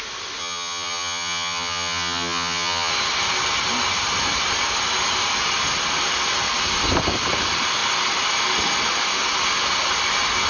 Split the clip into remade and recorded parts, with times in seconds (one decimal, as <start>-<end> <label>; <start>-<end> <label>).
0.0-0.4 recorded; 0.4-2.9 remade; 2.9-10.5 recorded